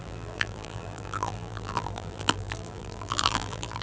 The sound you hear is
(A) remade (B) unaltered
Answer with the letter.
A